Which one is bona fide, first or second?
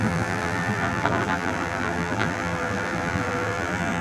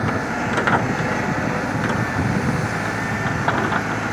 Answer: second